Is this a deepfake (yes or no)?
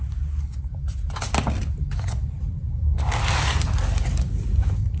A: no